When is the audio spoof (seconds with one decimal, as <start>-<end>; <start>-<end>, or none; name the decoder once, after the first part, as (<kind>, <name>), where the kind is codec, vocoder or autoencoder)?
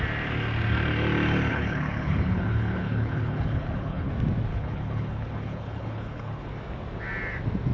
1.5-4.1 (codec, HILCodec); 4.5-6.5